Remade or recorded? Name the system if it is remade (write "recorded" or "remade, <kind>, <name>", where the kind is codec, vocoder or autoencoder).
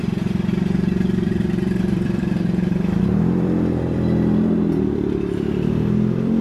remade, vocoder, BigVGAN v2